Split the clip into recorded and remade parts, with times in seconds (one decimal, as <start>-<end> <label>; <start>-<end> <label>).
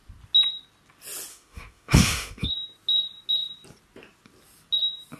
0.0-1.3 recorded; 1.3-2.5 remade; 2.5-5.2 recorded